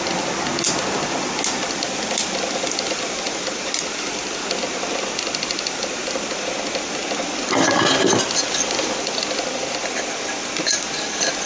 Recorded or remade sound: recorded